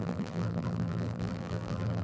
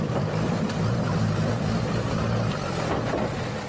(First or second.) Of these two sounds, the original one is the second